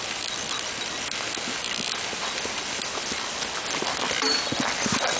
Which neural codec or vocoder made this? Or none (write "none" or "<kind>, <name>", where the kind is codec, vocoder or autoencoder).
none